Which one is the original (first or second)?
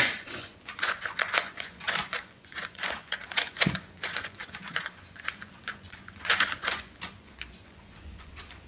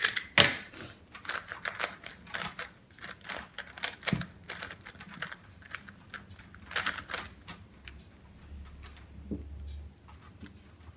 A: second